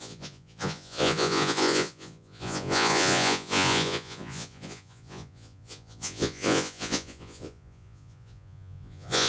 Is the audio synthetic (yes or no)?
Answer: yes